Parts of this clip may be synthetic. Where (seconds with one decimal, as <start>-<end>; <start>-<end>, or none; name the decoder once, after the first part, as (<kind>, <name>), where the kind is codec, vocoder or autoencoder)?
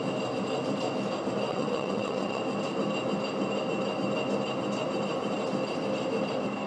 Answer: 1.5-2.4 (vocoder, WaveNeXt)